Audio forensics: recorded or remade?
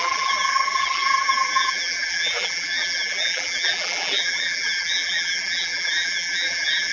remade